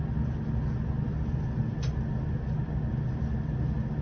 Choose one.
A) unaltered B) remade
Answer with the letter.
A